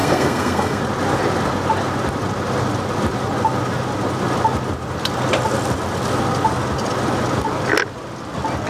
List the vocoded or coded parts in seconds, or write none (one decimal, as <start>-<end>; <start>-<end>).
0.0-0.8